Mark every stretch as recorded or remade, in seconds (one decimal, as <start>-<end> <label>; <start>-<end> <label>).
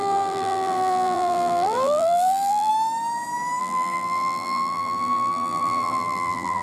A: 0.0-2.7 remade; 2.7-3.6 recorded; 3.6-6.6 remade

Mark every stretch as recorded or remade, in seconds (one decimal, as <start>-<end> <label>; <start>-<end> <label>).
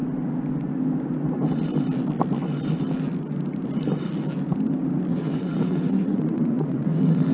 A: 0.0-5.1 recorded; 5.1-7.3 remade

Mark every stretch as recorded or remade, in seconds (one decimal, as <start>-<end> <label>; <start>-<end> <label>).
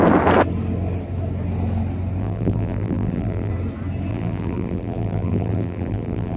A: 0.0-2.2 recorded; 2.2-3.5 remade; 3.5-4.1 recorded; 4.1-6.4 remade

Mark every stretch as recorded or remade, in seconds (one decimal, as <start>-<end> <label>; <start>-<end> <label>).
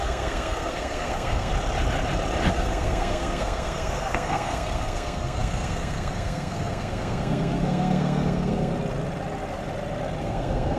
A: 0.0-1.5 remade; 1.5-2.5 recorded; 2.5-8.7 remade; 8.7-10.2 recorded; 10.2-10.8 remade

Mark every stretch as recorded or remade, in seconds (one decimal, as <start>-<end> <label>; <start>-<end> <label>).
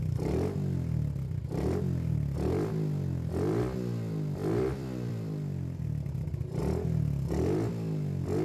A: 0.0-4.4 recorded; 4.4-6.6 remade; 6.6-8.4 recorded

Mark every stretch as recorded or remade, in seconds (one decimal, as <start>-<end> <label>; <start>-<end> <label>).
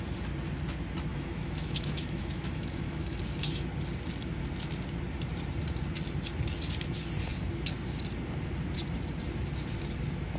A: 0.0-1.1 recorded; 1.1-3.2 remade; 3.2-10.4 recorded